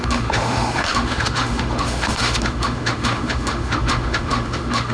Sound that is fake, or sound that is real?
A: fake